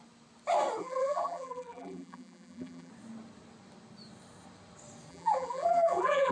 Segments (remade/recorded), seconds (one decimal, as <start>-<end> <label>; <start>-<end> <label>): 0.0-0.8 recorded; 0.8-2.9 remade; 2.9-5.1 recorded; 5.1-6.3 remade